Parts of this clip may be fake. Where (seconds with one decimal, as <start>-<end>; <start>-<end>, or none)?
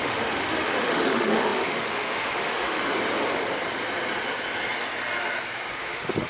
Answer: 0.0-2.8; 5.8-6.3